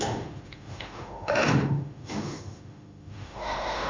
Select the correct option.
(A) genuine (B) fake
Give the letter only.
B